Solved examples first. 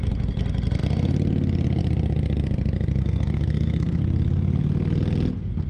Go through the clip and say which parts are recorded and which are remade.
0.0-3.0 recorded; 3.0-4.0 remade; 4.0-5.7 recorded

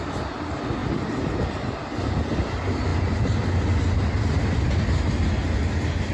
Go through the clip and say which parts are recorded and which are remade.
0.0-6.1 recorded

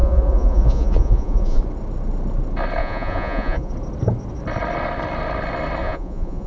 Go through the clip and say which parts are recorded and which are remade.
0.0-1.6 remade; 1.6-2.8 recorded; 2.8-3.7 remade; 3.7-5.8 recorded; 5.8-6.5 remade

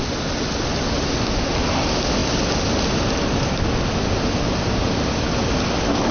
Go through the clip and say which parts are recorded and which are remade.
0.0-6.1 recorded

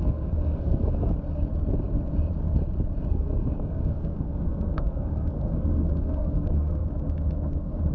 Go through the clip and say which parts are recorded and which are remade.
0.0-1.1 remade; 1.1-3.1 recorded; 3.1-6.8 remade; 6.8-7.9 recorded

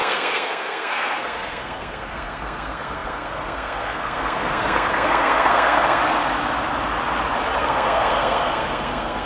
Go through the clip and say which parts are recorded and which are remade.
0.0-6.0 remade; 6.0-7.6 recorded; 7.6-9.3 remade

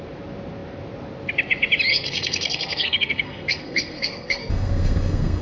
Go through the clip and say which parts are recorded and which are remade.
0.0-1.9 recorded; 1.9-5.4 remade

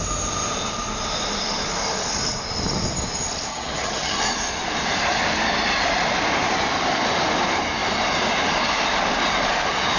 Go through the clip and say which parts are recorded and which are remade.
0.0-3.5 recorded; 3.5-4.2 remade; 4.2-10.0 recorded